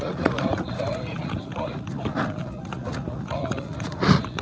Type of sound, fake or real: fake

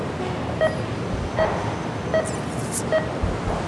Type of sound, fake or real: real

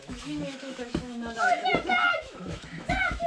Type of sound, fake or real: fake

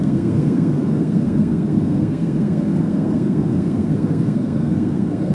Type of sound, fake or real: fake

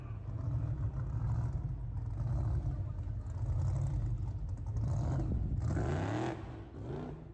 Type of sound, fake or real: real